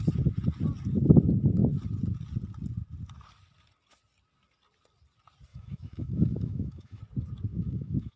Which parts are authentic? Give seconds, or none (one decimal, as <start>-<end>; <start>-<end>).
0.0-5.5; 7.0-7.5